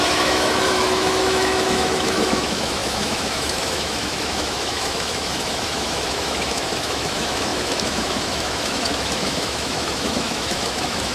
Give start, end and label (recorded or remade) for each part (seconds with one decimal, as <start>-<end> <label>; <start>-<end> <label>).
0.0-11.1 remade